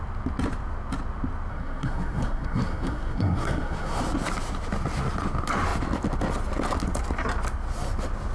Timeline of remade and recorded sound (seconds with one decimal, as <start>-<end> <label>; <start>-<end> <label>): 0.0-1.5 recorded; 1.5-4.0 remade; 4.0-8.3 recorded